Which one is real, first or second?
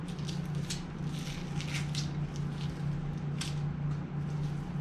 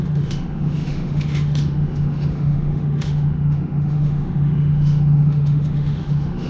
first